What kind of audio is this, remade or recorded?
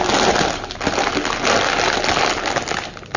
recorded